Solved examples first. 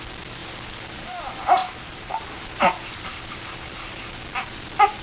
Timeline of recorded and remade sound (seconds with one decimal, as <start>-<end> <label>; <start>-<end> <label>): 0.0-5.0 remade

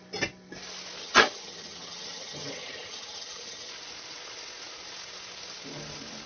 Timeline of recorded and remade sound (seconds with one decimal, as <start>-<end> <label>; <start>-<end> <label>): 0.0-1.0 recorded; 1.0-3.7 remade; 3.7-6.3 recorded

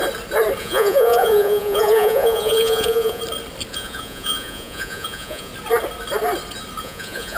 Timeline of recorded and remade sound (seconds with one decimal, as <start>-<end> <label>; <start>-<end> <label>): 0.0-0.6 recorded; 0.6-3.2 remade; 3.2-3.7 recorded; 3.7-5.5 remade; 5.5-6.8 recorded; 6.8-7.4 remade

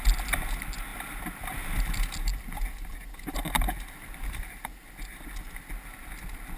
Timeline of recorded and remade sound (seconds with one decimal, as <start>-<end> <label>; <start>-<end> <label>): 0.0-6.6 recorded

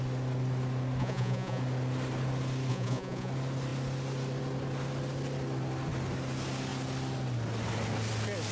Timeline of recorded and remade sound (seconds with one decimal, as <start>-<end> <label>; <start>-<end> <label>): 0.0-1.0 recorded; 1.0-1.6 remade; 1.6-2.7 recorded; 2.7-3.3 remade; 3.3-8.5 recorded

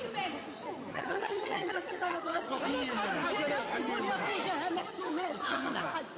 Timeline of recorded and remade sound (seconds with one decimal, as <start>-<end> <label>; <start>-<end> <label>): 0.0-0.9 recorded; 0.9-2.6 remade; 2.6-4.8 recorded; 4.8-5.8 remade; 5.8-6.2 recorded